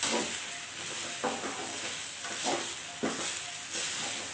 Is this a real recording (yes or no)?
yes